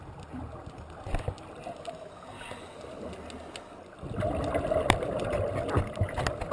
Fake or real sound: real